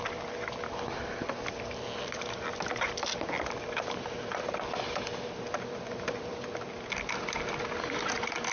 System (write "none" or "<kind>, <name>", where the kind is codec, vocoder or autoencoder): none